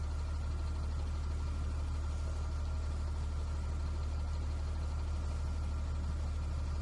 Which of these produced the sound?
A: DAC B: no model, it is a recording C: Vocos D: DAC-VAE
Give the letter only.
B